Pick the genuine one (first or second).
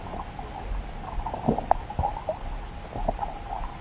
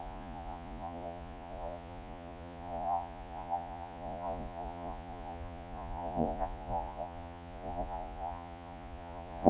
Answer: first